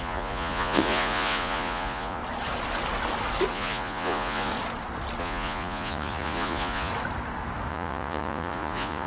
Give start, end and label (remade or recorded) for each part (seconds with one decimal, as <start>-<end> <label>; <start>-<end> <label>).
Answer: 0.0-2.2 remade; 2.2-3.5 recorded; 3.5-4.5 remade; 4.5-5.2 recorded; 5.2-6.9 remade; 6.9-7.7 recorded; 7.7-9.1 remade